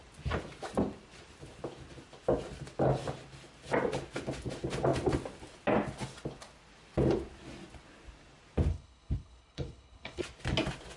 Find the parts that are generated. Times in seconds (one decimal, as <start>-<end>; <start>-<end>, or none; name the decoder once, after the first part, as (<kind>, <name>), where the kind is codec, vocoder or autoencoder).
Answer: 8.7-10.2 (codec, HILCodec)